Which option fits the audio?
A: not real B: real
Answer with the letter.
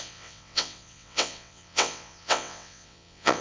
A